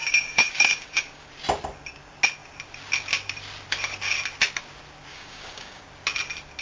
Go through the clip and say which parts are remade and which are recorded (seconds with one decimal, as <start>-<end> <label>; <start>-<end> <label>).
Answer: 0.0-1.3 remade; 1.3-5.1 recorded; 5.1-5.8 remade; 5.8-6.6 recorded